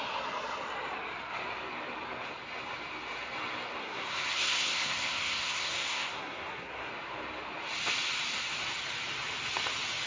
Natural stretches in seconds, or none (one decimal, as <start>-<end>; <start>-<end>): 0.0-3.8; 6.9-10.1